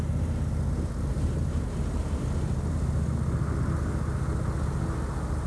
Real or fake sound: real